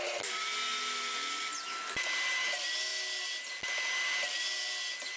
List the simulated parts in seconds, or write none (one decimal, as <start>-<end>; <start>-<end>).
none